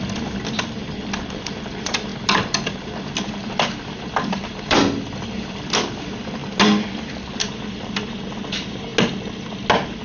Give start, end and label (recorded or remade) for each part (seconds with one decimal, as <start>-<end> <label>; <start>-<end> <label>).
0.0-2.1 remade; 2.1-4.3 recorded; 4.3-6.4 remade; 6.4-7.5 recorded; 7.5-8.9 remade; 8.9-10.0 recorded